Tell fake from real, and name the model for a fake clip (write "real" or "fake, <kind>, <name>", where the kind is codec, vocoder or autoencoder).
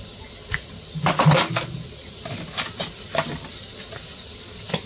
real